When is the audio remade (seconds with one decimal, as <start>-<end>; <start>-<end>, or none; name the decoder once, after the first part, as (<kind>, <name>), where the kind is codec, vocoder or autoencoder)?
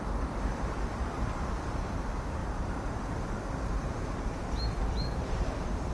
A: 0.5-1.8 (vocoder, BigVGAN v2); 2.4-5.5